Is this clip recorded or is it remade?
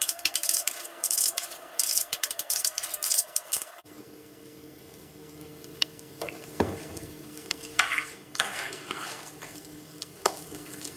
remade